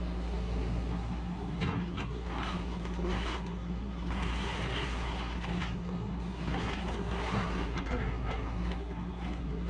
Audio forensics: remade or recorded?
remade